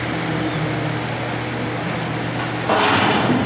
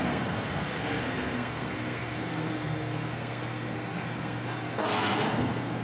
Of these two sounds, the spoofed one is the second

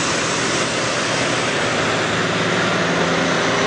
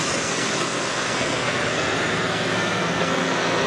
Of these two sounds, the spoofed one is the second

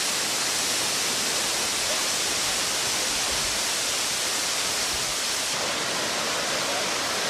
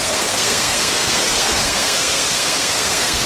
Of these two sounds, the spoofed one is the second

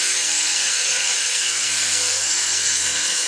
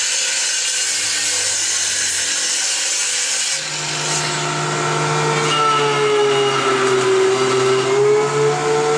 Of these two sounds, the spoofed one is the first